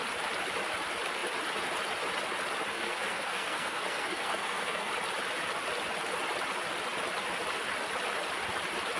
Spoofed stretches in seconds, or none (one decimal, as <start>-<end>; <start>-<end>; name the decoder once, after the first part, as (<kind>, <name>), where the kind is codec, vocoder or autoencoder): 2.7-4.9 (codec, SNAC)